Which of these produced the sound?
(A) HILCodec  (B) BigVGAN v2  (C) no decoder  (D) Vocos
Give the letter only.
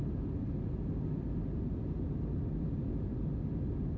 C